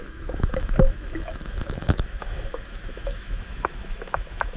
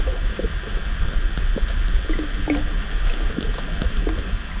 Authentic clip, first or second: second